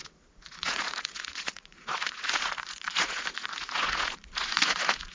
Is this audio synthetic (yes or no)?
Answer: yes